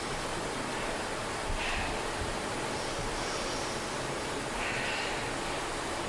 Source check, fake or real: real